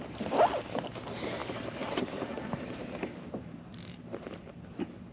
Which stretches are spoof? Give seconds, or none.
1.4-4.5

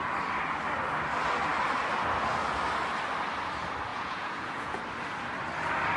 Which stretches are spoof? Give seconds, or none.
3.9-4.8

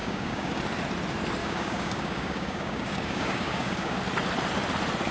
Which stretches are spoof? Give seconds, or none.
0.0-0.6; 1.4-4.0

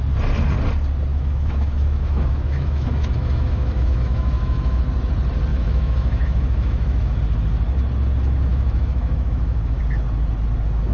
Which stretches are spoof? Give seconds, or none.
1.1-4.8; 5.5-7.2; 8.5-9.8

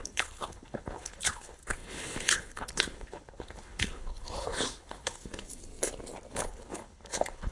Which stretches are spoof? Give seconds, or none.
0.0-5.6; 6.3-7.5